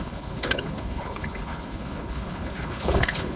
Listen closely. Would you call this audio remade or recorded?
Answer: remade